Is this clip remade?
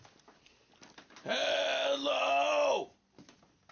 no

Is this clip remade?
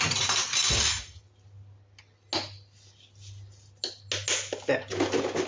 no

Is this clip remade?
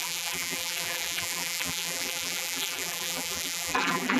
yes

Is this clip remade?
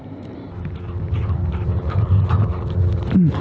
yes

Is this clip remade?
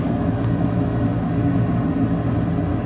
no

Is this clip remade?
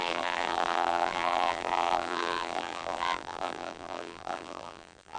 yes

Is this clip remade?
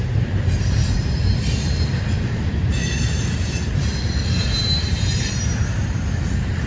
yes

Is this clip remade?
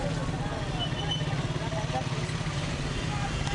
no